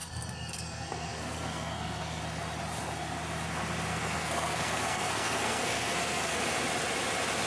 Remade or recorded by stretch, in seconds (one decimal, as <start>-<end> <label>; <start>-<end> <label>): 0.0-2.2 remade; 2.2-3.9 recorded; 3.9-6.4 remade; 6.4-7.5 recorded